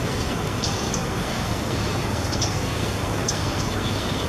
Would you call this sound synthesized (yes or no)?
yes